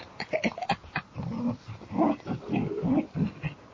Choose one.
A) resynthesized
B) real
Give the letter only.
B